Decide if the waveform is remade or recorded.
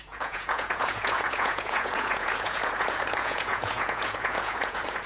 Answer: remade